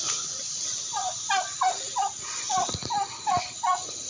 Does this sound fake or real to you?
fake